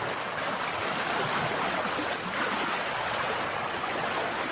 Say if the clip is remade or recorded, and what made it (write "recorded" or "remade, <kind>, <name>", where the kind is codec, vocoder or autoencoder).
recorded